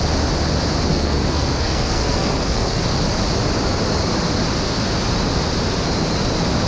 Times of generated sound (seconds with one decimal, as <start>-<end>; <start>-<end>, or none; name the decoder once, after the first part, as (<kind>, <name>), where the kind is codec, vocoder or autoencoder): 0.9-2.8 (codec, SNAC)